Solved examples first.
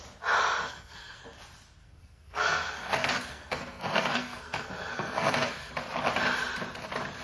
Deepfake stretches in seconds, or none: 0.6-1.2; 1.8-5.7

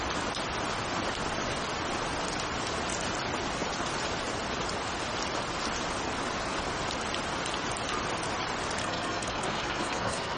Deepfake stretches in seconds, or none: 8.8-10.4